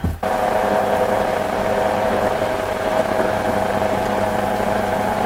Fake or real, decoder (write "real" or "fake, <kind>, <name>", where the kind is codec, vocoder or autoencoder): fake, vocoder, BigVGAN v2